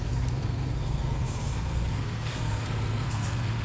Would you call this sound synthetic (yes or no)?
yes